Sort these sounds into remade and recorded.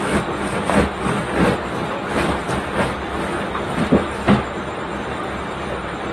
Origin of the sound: recorded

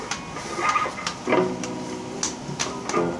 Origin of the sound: recorded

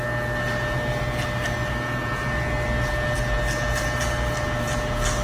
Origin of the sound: recorded